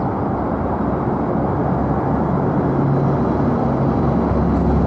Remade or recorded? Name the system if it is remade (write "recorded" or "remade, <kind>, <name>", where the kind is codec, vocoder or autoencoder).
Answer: recorded